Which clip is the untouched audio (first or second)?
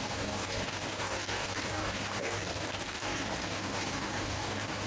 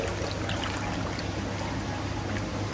second